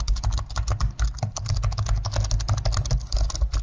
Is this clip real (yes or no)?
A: yes